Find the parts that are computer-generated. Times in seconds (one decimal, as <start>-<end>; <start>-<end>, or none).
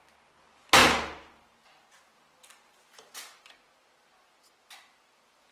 none